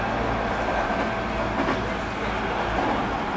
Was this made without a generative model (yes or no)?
yes